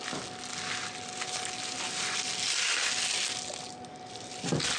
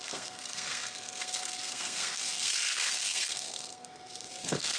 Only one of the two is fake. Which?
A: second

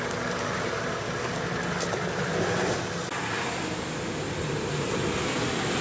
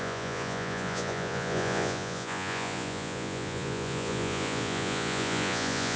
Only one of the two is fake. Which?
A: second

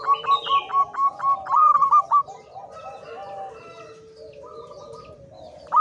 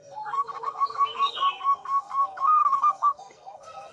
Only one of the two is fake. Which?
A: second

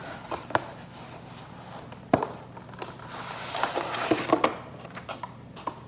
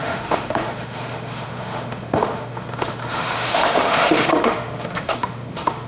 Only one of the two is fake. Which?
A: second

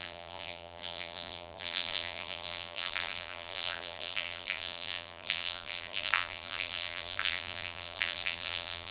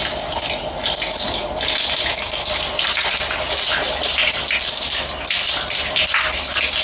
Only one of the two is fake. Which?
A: first